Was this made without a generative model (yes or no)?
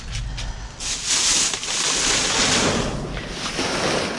yes